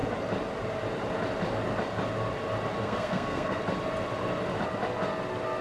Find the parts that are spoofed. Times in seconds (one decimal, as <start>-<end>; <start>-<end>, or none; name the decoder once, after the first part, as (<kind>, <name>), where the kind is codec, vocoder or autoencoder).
2.8-3.6 (codec, SNAC)